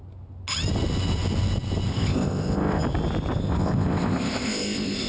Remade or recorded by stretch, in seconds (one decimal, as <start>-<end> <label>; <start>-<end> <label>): 0.0-1.9 recorded; 1.9-2.8 remade; 2.8-3.4 recorded; 3.4-5.1 remade